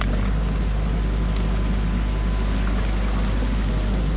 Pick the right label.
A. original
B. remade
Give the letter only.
A